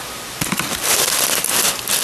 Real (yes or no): no